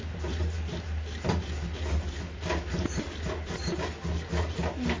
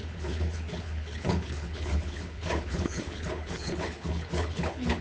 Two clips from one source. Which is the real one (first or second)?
first